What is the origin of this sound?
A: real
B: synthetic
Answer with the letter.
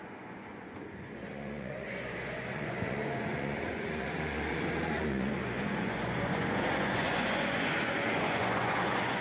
B